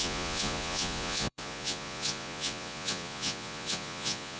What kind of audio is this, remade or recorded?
remade